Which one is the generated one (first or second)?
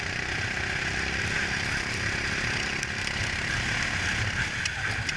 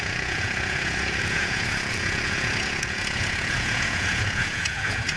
second